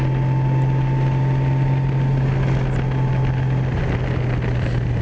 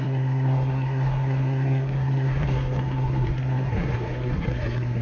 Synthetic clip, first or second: second